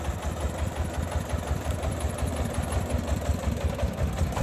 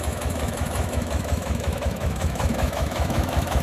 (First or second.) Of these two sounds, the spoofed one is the second